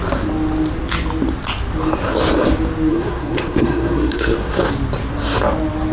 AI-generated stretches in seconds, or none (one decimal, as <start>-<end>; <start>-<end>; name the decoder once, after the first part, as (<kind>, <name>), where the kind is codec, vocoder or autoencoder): 2.9-4.7 (codec, SNAC)